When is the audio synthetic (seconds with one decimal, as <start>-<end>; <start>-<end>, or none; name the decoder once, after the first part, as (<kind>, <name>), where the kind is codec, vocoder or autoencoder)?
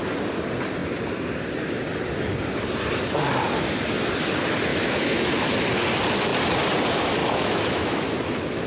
4.7-5.3 (autoencoder, DAC-VAE); 7.2-8.0